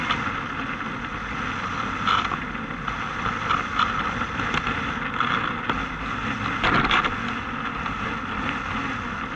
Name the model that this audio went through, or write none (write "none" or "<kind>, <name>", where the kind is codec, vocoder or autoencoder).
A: none